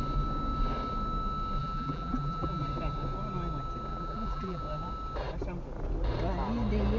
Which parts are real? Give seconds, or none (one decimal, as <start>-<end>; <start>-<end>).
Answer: 0.0-1.6; 2.6-3.9; 4.6-7.0